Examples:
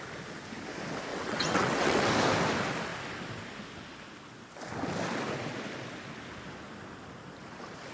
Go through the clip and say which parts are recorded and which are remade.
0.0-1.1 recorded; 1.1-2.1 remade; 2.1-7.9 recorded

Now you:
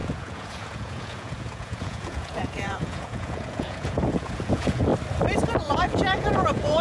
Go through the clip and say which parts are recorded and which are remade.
0.0-4.9 remade; 4.9-5.6 recorded; 5.6-6.8 remade

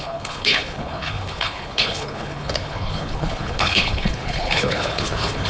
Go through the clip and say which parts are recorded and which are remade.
0.0-5.5 remade